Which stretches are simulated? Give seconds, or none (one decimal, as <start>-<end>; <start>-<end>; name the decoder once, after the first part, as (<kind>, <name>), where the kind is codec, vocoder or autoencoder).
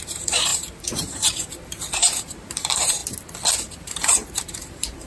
0.0-3.0 (vocoder, BigVGAN v2); 3.6-5.1